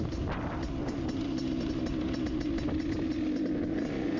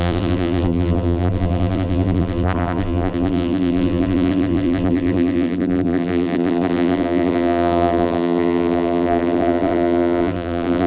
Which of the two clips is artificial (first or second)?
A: second